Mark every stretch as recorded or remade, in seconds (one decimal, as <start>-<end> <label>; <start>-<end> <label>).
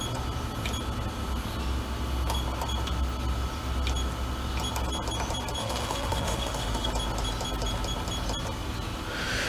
0.0-5.6 recorded; 5.6-6.9 remade; 6.9-9.5 recorded